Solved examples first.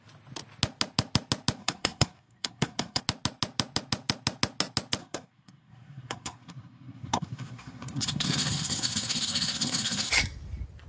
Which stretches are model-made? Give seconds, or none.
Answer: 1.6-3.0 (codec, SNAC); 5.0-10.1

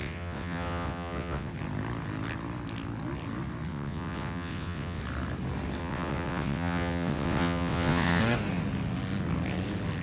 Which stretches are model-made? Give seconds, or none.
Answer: 0.0-1.5 (vocoder, WaveNeXt); 3.7-5.0; 5.8-8.2

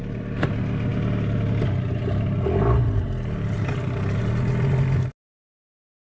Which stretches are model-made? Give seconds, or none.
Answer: none

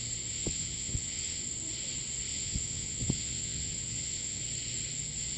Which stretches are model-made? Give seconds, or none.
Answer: 0.4-1.4 (vocoder, WaveNeXt); 2.3-4.4